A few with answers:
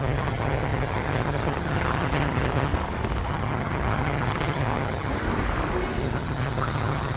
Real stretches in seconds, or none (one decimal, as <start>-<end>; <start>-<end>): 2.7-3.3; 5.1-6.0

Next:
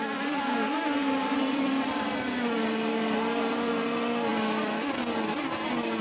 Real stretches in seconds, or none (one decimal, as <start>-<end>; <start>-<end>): 0.0-1.2; 3.7-6.0

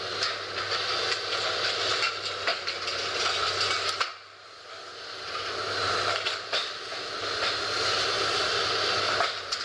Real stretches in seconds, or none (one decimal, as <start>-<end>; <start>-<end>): 0.0-9.6

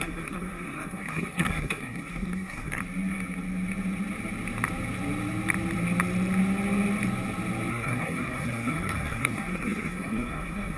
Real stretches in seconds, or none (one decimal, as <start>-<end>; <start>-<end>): 2.8-7.7